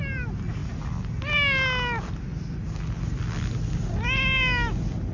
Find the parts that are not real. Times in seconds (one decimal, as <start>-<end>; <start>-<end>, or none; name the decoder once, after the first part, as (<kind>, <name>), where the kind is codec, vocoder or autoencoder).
none